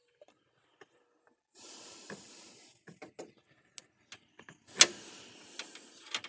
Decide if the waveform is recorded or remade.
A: recorded